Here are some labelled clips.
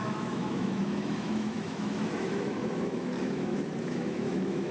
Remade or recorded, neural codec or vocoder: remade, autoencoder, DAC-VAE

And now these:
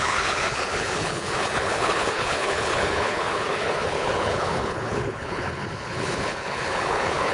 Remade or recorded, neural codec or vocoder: remade, codec, HILCodec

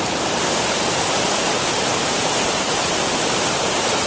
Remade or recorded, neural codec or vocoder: remade, vocoder, BigVGAN v2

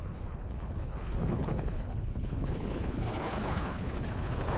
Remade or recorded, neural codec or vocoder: remade, codec, HILCodec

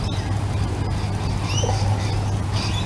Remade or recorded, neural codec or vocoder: recorded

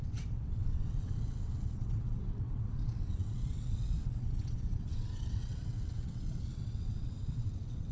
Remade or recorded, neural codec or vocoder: remade, vocoder, WaveNeXt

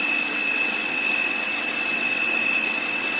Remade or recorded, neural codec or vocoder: remade, vocoder, WaveNeXt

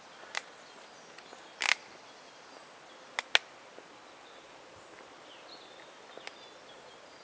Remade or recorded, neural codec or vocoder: recorded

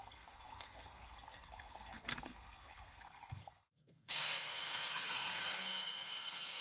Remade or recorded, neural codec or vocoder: remade, codec, SNAC